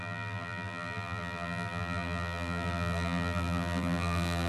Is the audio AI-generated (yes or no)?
yes